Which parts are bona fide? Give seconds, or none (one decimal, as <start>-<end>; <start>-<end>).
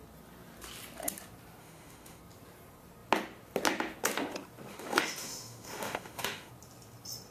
0.0-1.6; 2.2-4.7; 6.5-7.3